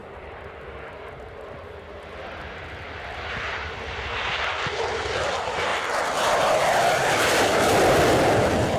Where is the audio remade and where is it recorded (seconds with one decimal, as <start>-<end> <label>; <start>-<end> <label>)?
0.0-0.6 remade; 0.6-5.7 recorded; 5.7-8.8 remade